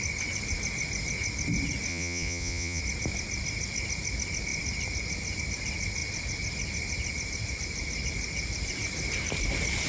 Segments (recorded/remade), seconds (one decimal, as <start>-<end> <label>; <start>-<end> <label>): 0.0-1.9 recorded; 1.9-2.8 remade; 2.8-9.9 recorded